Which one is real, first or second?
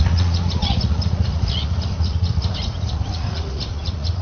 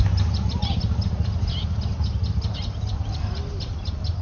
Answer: second